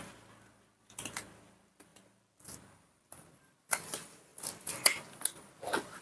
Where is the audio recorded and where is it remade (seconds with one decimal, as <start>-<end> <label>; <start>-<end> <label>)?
0.0-6.0 recorded